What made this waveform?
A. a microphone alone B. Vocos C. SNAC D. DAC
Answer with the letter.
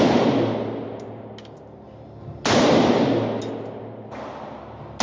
A